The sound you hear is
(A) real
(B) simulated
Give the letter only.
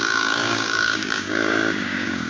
B